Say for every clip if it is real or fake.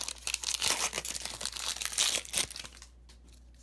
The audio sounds real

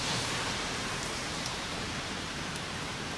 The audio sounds fake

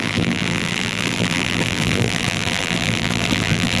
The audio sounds fake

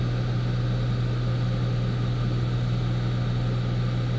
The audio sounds real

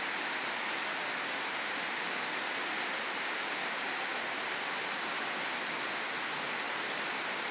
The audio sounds real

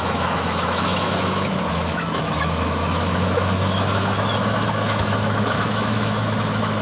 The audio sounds fake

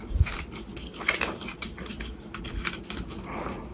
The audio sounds real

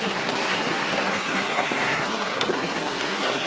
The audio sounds fake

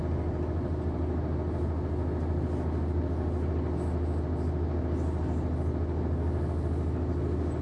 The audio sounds real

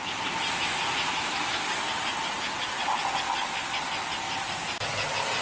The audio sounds real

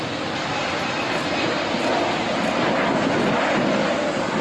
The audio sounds real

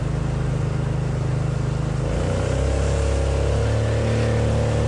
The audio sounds real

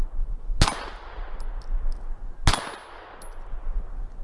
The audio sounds real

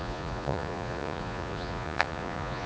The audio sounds fake